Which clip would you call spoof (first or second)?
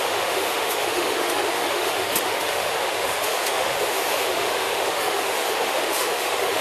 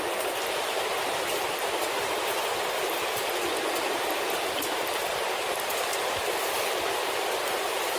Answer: first